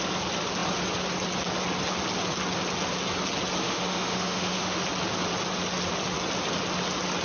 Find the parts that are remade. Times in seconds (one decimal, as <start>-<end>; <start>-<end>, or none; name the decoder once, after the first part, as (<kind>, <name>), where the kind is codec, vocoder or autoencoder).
3.6-4.8 (autoencoder, DAC-VAE)